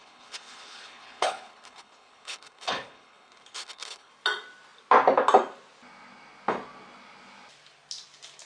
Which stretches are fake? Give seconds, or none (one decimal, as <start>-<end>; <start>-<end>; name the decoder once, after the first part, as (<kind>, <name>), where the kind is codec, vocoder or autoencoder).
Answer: 0.0-4.1 (codec, HILCodec)